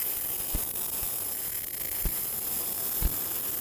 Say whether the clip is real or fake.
real